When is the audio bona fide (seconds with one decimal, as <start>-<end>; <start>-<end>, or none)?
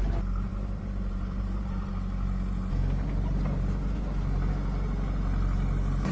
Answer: 0.0-0.5; 1.9-6.1